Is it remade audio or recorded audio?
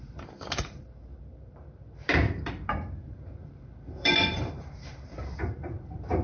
remade